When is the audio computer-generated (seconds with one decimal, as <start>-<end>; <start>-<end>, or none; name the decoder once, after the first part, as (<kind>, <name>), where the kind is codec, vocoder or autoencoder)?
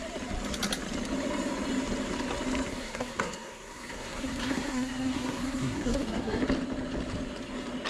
2.7-6.4 (codec, SNAC)